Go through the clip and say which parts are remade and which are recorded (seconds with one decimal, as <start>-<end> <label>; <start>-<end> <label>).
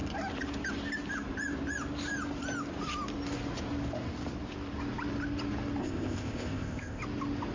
0.0-5.8 recorded; 5.8-7.0 remade; 7.0-7.5 recorded